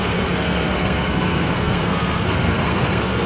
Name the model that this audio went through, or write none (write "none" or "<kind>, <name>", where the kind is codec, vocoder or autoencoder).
codec, SNAC